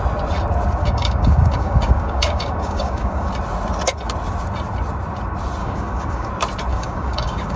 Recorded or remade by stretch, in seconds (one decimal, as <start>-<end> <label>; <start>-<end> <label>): 0.0-0.8 recorded; 0.8-3.3 remade; 3.3-5.6 recorded; 5.6-6.3 remade; 6.3-6.7 recorded; 6.7-7.6 remade